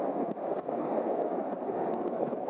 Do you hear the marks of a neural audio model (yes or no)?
yes